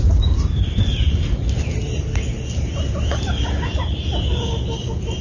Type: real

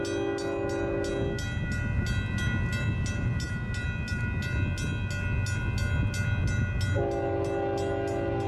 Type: real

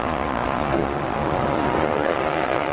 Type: fake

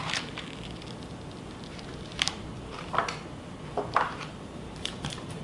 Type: fake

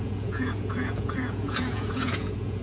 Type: fake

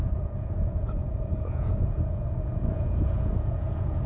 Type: fake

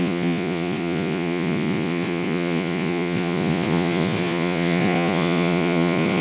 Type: fake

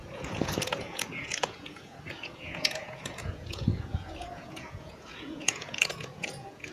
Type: fake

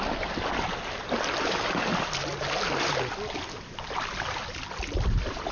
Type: real